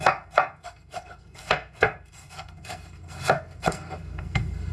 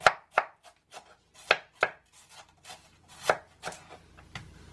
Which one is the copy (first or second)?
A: first